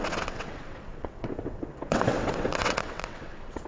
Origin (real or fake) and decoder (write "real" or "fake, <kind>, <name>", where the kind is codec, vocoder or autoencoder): fake, vocoder, WaveNeXt